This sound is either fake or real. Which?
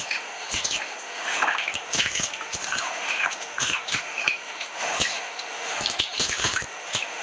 fake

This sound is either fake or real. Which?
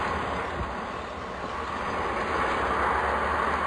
real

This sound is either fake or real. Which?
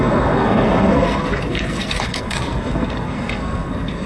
fake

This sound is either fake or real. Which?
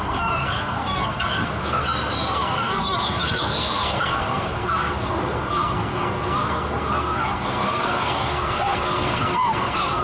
fake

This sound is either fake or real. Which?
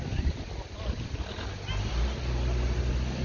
real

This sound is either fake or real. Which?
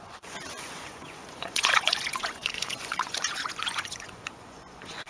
fake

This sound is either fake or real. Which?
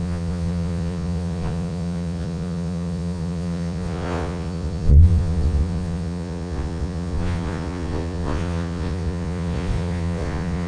fake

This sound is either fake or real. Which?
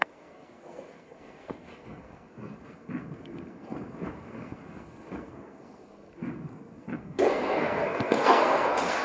fake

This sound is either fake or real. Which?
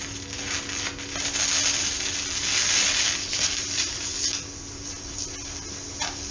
real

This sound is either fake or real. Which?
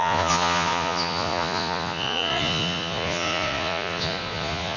fake